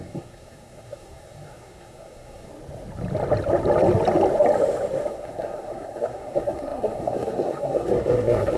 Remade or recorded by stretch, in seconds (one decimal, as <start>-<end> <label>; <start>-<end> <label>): 0.0-2.5 remade; 2.5-5.1 recorded; 5.1-8.6 remade